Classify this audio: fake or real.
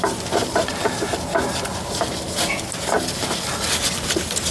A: real